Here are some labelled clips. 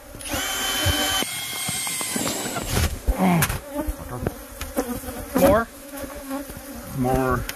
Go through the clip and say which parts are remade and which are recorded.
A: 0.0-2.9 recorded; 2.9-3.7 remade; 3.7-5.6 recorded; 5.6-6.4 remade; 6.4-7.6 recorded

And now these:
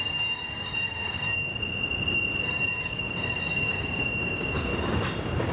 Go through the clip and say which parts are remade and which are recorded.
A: 0.0-1.5 remade; 1.5-2.5 recorded; 2.5-4.7 remade; 4.7-5.5 recorded

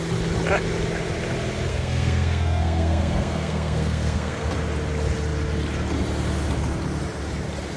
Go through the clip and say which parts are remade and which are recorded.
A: 0.0-1.7 recorded; 1.7-4.5 remade; 4.5-7.8 recorded

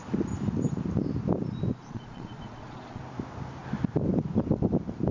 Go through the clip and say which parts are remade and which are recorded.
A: 0.0-1.7 recorded; 1.7-3.0 remade; 3.0-5.1 recorded